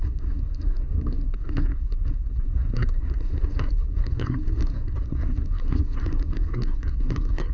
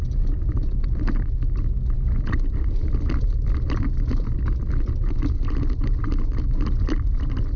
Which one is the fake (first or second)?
first